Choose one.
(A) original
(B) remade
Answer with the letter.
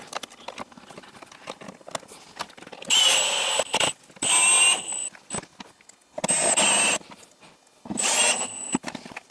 A